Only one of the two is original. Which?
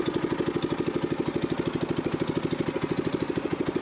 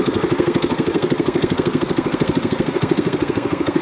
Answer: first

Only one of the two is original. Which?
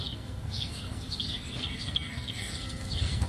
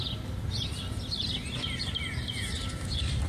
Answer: second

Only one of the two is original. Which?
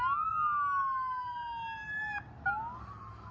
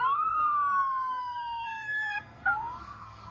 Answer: first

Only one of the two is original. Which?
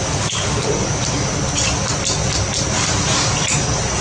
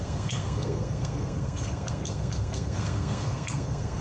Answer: first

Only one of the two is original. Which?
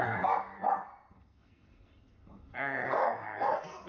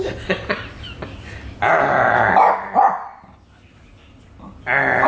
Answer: second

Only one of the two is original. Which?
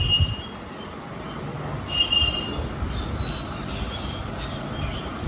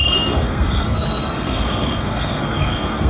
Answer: first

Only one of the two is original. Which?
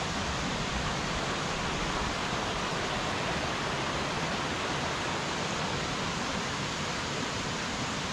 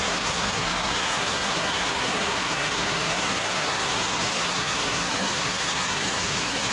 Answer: first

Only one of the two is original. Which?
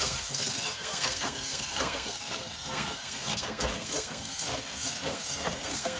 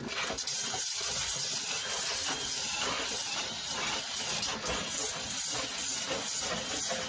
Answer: second